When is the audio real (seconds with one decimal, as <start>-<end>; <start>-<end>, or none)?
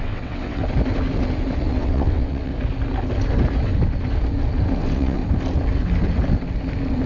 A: 0.6-1.6; 2.5-4.7; 5.2-7.1